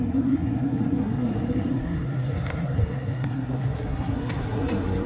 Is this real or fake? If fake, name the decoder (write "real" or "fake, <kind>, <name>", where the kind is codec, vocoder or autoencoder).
fake, codec, SNAC